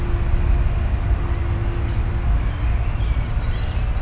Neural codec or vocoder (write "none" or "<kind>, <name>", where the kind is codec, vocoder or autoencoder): none